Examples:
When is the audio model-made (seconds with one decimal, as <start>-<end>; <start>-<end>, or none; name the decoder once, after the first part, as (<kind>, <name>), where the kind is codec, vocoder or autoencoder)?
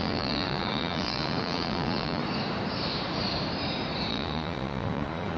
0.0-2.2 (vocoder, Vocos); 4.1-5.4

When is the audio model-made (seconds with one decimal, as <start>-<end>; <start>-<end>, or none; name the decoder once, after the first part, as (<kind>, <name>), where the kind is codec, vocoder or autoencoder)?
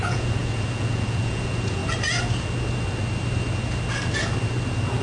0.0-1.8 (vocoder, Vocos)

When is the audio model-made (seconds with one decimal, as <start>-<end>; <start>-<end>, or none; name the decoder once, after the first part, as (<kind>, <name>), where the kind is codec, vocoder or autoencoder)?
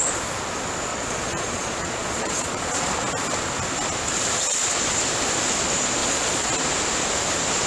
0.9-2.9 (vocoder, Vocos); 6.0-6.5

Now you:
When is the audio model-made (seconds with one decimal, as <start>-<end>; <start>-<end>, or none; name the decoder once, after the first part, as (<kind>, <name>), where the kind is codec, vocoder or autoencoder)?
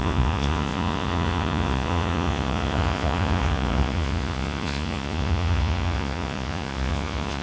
0.0-7.4 (vocoder, Vocos)